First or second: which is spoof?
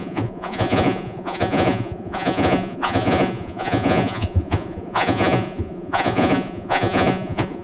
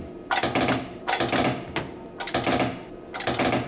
first